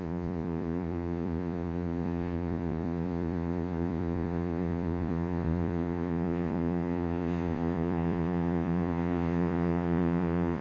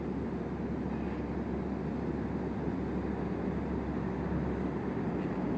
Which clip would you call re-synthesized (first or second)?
first